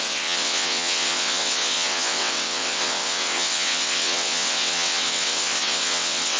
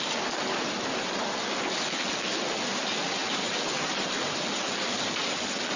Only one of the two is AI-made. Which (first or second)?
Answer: first